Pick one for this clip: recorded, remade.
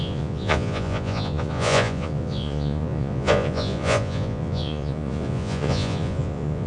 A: remade